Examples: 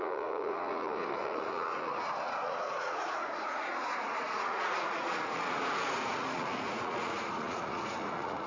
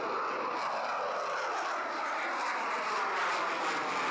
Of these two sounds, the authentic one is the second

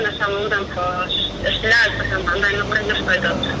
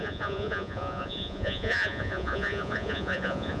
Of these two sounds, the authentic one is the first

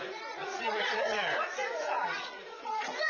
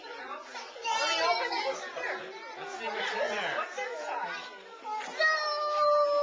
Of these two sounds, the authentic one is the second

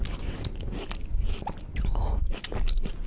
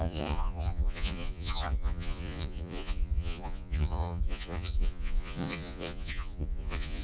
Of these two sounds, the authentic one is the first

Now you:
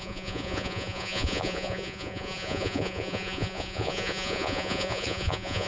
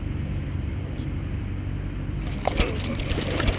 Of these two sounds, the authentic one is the second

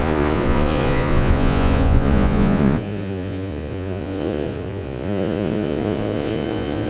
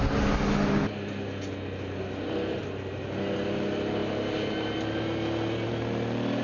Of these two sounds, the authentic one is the second